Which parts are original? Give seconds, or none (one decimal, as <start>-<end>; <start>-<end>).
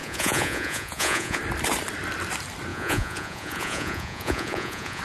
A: 1.4-2.7